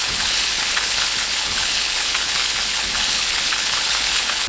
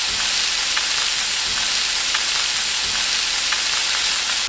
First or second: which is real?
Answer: second